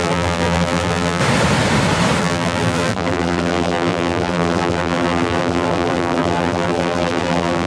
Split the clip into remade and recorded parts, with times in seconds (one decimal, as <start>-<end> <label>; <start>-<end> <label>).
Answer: 0.0-1.2 remade; 1.2-2.2 recorded; 2.2-7.7 remade